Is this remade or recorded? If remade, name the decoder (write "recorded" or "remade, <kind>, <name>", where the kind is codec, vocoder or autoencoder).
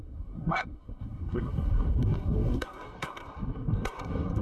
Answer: remade, codec, SNAC